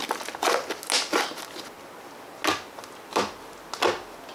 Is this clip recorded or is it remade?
recorded